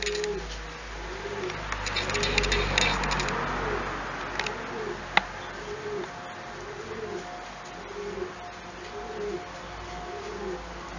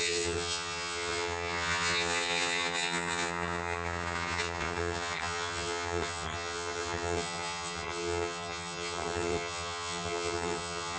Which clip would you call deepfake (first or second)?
second